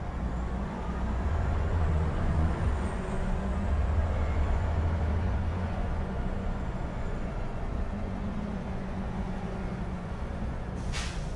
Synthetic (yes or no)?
yes